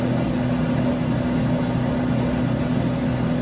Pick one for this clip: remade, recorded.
recorded